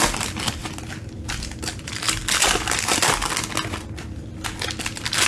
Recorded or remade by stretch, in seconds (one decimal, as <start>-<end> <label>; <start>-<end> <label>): 0.0-5.3 recorded